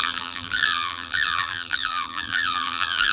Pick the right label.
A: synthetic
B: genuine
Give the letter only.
A